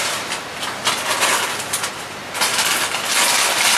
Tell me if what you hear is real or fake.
real